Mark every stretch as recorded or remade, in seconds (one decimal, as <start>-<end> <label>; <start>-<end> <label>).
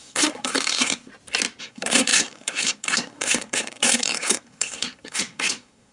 0.0-1.1 remade; 1.1-1.6 recorded; 1.6-5.9 remade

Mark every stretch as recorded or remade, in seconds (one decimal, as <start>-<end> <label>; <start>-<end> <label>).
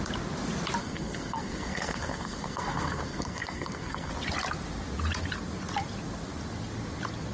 0.0-0.8 recorded; 0.8-4.1 remade; 4.1-7.3 recorded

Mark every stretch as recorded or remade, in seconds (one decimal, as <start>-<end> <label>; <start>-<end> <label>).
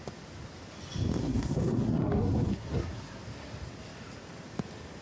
0.0-1.2 recorded; 1.2-3.2 remade; 3.2-5.0 recorded